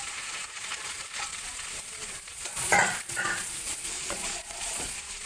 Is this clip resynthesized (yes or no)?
yes